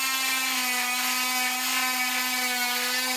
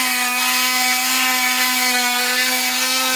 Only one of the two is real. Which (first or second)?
first